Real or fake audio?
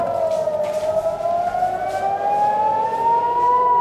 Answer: real